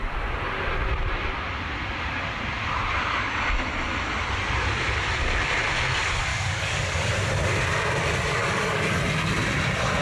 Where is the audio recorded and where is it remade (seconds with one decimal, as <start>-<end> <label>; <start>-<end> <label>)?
0.0-6.3 recorded; 6.3-7.1 remade; 7.1-8.4 recorded; 8.4-9.0 remade; 9.0-10.0 recorded

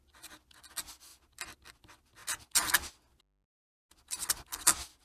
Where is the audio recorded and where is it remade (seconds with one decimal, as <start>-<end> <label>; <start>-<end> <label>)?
0.0-5.0 recorded

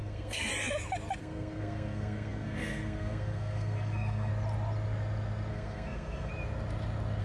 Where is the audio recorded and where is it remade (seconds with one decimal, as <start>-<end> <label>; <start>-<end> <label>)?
0.0-0.5 remade; 0.5-1.2 recorded; 1.2-4.3 remade; 4.3-5.5 recorded; 5.5-6.3 remade; 6.3-7.2 recorded

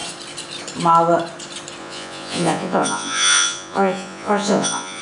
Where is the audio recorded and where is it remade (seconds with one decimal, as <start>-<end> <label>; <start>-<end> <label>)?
0.0-1.8 recorded; 1.8-5.0 remade

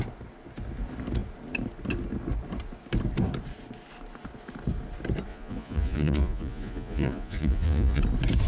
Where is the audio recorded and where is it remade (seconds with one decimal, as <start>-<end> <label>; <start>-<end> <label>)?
0.0-5.3 recorded; 5.3-8.0 remade; 8.0-8.5 recorded

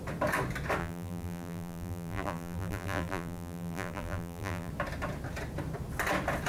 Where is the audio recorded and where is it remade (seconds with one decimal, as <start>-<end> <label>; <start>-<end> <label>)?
0.0-0.8 recorded; 0.8-4.7 remade; 4.7-6.5 recorded